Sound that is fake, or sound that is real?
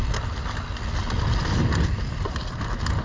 real